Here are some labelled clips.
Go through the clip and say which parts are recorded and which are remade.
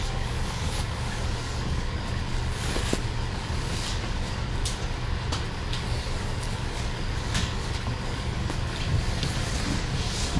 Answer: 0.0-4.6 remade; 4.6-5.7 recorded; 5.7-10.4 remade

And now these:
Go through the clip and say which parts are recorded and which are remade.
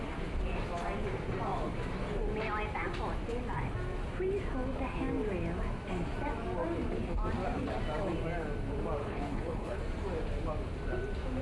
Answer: 0.0-9.0 recorded; 9.0-9.8 remade; 9.8-11.4 recorded